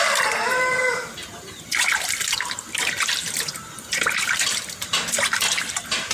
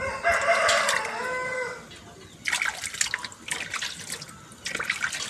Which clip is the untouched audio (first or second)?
second